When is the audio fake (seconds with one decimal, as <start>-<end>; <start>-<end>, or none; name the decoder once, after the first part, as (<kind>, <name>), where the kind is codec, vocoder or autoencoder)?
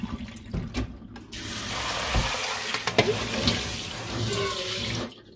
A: none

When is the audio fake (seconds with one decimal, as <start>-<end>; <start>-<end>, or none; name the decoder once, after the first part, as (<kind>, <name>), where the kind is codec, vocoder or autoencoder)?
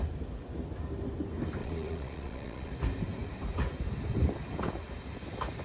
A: 1.6-2.7 (vocoder, Vocos)